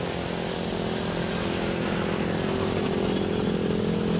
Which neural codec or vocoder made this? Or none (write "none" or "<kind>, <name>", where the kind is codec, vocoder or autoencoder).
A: none